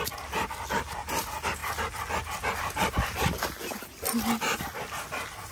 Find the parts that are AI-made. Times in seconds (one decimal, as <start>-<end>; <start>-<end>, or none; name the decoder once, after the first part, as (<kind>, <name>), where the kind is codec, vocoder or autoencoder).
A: none